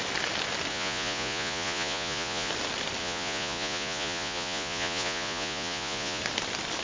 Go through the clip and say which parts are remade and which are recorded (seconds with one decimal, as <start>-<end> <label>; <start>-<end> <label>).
0.0-0.7 recorded; 0.7-2.5 remade; 2.5-3.0 recorded; 3.0-6.2 remade; 6.2-6.8 recorded